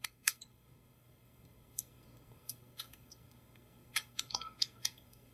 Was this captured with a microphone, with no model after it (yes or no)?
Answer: no